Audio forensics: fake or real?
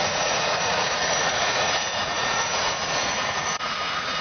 fake